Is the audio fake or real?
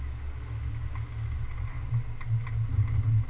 real